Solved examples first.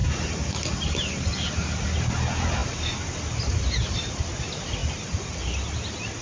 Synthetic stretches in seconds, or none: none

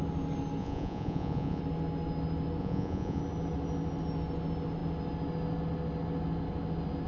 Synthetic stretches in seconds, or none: 0.6-1.6; 2.6-3.2

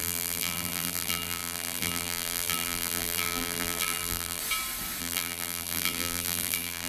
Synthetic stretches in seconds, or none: 0.0-4.4; 5.0-6.9

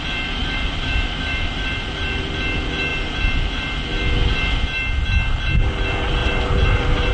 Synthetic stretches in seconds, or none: 0.4-2.3; 6.2-7.1

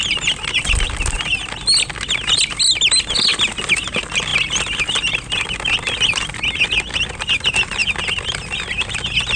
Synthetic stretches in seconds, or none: none

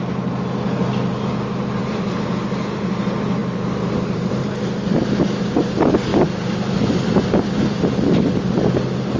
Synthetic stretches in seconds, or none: 1.8-2.3; 3.4-4.4; 6.1-7.3

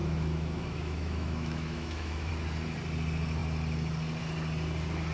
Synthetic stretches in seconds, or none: 0.0-2.3

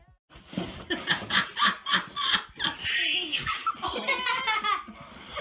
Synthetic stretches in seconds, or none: 3.6-5.4